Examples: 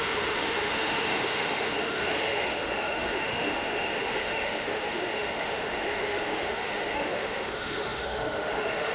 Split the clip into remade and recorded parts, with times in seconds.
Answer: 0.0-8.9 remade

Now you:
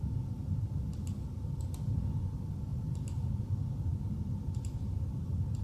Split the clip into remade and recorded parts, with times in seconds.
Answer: 0.0-3.9 recorded; 3.9-5.6 remade

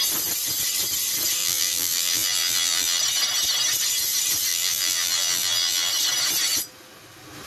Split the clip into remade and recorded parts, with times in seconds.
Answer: 0.0-1.4 recorded; 1.4-3.0 remade; 3.0-4.5 recorded; 4.5-5.9 remade; 5.9-7.5 recorded

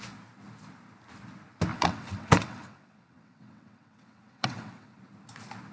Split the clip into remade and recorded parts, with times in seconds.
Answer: 0.0-1.7 recorded; 1.7-5.0 remade; 5.0-5.7 recorded

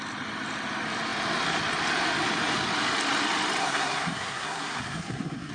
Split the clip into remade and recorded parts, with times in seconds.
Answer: 0.0-3.6 recorded; 3.6-5.5 remade